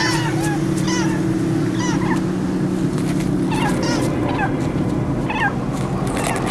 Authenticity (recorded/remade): recorded